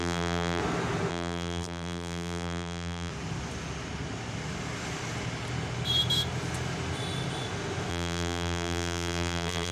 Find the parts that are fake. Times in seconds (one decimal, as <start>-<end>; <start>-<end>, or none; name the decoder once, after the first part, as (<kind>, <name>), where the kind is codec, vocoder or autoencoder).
0.0-0.6 (vocoder, BigVGAN v2); 1.1-3.1; 7.9-9.7